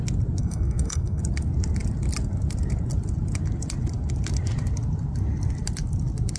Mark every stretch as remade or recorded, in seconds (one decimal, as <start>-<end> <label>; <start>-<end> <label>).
0.0-0.4 recorded; 0.4-1.2 remade; 1.2-6.4 recorded